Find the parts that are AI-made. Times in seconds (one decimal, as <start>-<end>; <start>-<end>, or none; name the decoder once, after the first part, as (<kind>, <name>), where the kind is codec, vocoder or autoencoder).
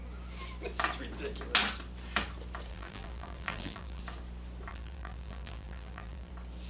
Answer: 2.7-4.0 (vocoder, BigVGAN v2); 4.7-6.3